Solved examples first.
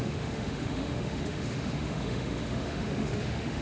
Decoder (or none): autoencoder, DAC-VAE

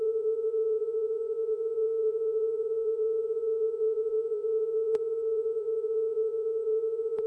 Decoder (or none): vocoder, Vocos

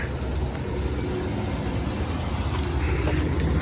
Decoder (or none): none